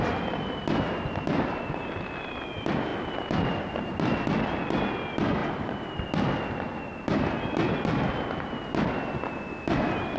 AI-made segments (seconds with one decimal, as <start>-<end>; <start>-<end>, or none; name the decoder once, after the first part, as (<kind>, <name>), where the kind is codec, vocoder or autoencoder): none